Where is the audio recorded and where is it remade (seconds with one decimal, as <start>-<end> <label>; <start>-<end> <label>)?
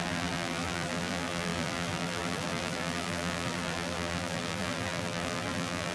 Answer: 0.0-5.9 remade